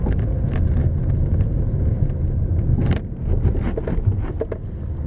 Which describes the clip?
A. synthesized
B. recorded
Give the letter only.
B